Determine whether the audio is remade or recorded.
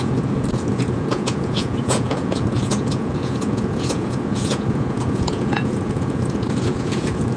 remade